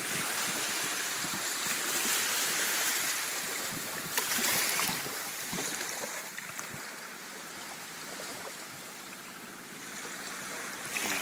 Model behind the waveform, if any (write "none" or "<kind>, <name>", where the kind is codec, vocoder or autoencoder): vocoder, BigVGAN v2